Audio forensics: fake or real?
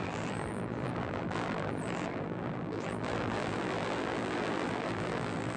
fake